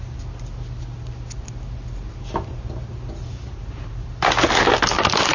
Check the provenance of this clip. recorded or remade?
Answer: recorded